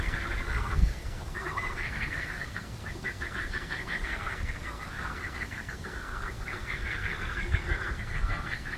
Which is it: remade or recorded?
remade